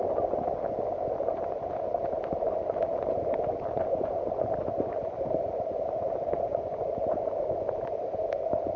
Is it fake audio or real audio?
real